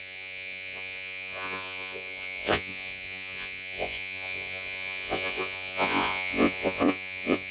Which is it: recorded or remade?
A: remade